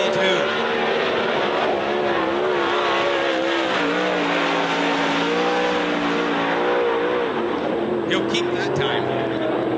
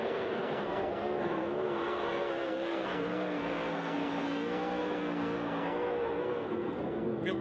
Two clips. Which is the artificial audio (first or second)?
second